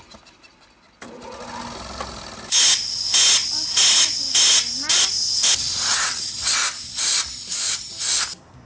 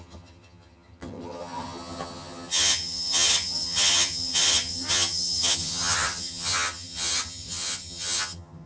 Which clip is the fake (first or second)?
second